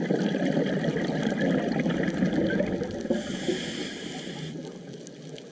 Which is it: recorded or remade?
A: recorded